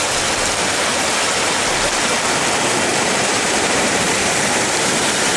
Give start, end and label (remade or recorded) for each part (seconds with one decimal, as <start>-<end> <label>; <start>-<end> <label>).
0.0-0.9 recorded; 0.9-1.4 remade; 1.4-2.9 recorded; 2.9-5.0 remade; 5.0-5.4 recorded